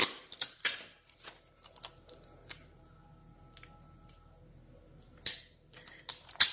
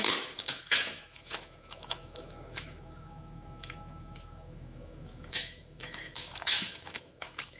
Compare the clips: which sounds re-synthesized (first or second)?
second